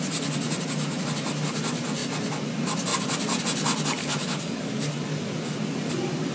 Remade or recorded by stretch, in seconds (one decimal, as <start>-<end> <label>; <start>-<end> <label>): 0.0-4.0 recorded; 4.0-4.7 remade; 4.7-6.3 recorded